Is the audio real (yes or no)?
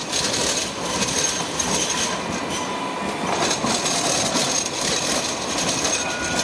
yes